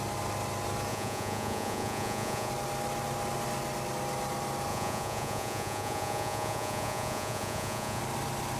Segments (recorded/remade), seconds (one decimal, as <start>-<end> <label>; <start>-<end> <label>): 0.0-0.9 recorded; 0.9-2.5 remade; 2.5-4.7 recorded; 4.7-8.0 remade; 8.0-8.6 recorded